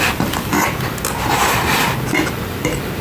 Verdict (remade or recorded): recorded